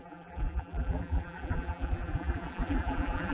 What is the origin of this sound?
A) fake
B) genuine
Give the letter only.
A